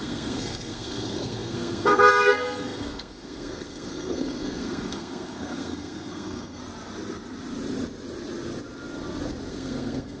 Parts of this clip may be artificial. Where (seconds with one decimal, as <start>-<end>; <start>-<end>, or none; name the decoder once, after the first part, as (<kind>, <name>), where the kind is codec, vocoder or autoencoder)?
0.0-6.6 (codec, SNAC); 9.5-10.2